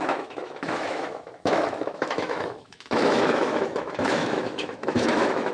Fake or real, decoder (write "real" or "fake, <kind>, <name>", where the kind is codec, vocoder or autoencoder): fake, autoencoder, DAC-VAE